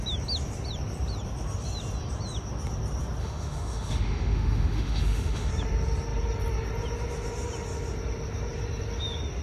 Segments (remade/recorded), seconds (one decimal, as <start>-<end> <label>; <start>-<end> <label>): 0.0-3.2 recorded; 3.2-5.5 remade; 5.5-9.4 recorded